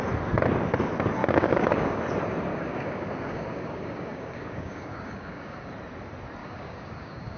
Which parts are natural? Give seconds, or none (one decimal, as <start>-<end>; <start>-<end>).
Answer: 0.0-1.2; 2.0-2.5; 5.7-6.4